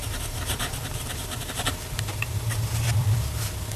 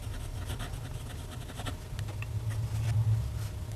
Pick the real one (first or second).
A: second